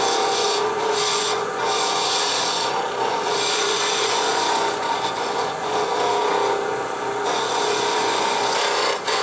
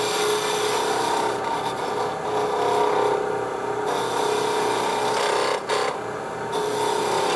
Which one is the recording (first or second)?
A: second